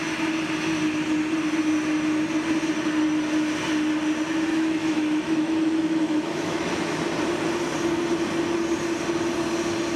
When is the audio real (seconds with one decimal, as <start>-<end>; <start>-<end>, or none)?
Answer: 0.0-4.5; 7.0-10.0